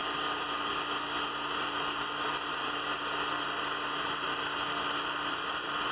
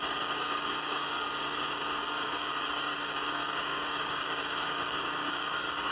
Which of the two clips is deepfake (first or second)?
second